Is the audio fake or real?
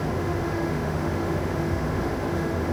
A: fake